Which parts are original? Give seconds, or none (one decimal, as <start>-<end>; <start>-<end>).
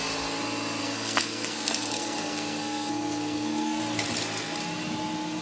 0.0-0.8; 3.8-5.4